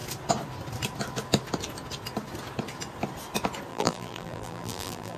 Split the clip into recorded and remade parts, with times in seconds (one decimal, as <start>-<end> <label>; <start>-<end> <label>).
0.0-3.7 recorded; 3.7-5.2 remade